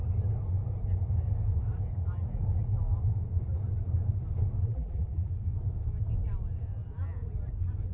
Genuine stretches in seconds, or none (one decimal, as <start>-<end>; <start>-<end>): 0.0-4.6; 5.3-7.9